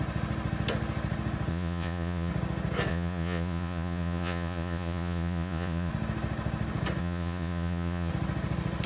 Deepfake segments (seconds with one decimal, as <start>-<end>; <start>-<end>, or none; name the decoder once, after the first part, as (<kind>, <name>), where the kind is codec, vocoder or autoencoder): 1.5-2.3 (vocoder, Vocos); 2.9-5.9; 7.0-8.1